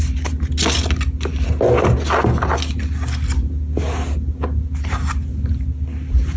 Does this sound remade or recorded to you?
recorded